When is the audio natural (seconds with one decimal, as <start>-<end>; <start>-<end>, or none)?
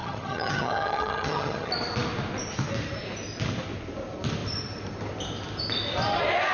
1.7-6.5